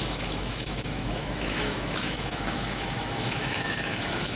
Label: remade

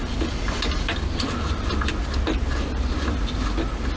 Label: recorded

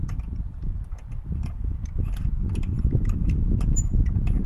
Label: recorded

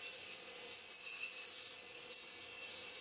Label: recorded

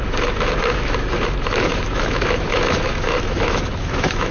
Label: remade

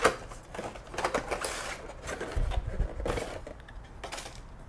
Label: recorded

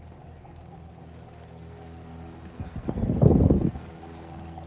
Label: remade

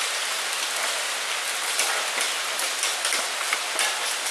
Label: recorded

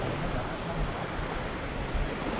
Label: recorded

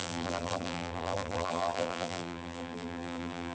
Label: remade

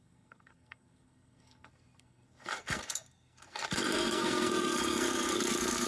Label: remade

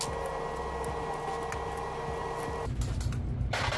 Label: recorded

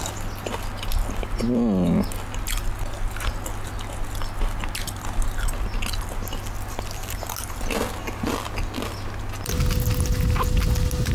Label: recorded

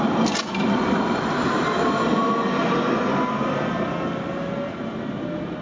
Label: recorded